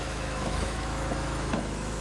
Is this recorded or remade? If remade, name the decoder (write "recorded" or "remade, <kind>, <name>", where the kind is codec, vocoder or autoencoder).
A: remade, autoencoder, DAC-VAE